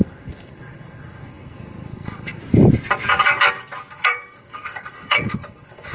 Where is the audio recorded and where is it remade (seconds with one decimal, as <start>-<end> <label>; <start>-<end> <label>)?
0.0-2.4 remade; 2.4-3.9 recorded; 3.9-5.9 remade